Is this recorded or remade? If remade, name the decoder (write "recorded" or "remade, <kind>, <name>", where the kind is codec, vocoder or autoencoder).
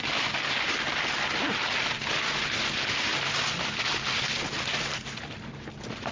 recorded